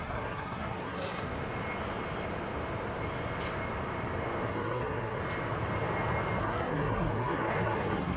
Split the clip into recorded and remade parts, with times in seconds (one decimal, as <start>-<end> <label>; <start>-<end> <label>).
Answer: 0.0-1.3 remade; 1.3-4.4 recorded; 4.4-5.2 remade; 5.2-6.4 recorded; 6.4-8.2 remade